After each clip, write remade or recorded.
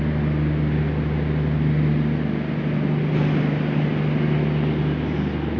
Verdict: recorded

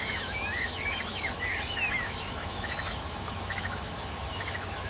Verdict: remade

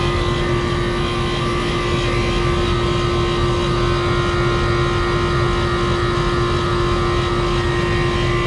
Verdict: recorded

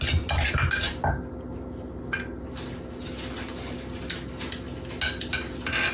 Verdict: recorded